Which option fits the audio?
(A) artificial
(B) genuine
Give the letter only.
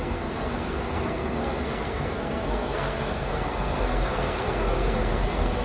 A